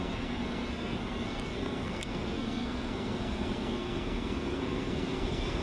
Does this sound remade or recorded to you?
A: remade